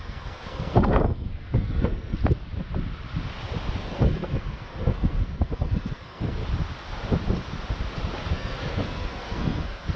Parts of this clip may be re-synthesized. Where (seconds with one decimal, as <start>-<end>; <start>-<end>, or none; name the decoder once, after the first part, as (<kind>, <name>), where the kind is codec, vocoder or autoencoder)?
0.0-2.2 (codec, SNAC); 3.8-6.4; 8.3-10.0